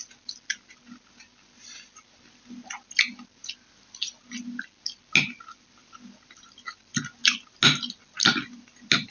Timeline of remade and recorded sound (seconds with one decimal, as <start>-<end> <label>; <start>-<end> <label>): 0.0-9.1 recorded